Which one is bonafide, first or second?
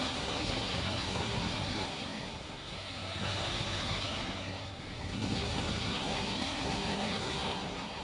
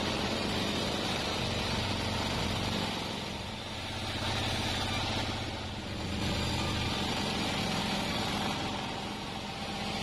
second